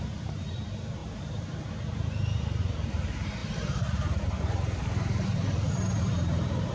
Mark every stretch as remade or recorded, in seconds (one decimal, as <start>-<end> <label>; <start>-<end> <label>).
0.0-6.7 remade